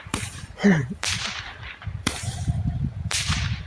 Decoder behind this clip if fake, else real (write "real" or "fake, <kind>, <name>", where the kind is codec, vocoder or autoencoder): fake, vocoder, BigVGAN v2